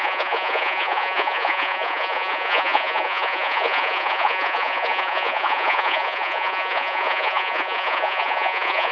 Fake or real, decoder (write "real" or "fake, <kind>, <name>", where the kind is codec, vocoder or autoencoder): fake, vocoder, Vocos